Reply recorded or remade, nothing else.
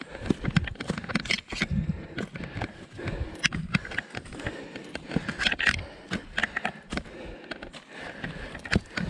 recorded